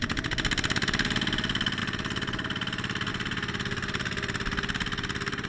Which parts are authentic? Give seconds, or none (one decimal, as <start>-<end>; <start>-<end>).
0.0-5.5